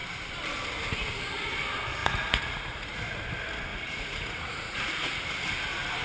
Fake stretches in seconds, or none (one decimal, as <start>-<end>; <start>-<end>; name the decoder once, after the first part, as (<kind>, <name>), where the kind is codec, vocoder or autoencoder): 2.0-3.2 (vocoder, Vocos); 3.7-5.2